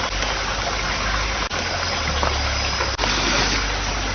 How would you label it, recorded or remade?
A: recorded